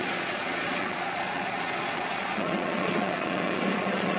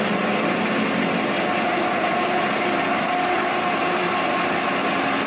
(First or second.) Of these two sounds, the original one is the second